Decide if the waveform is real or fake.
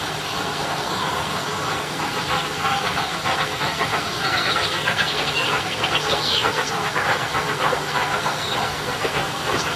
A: fake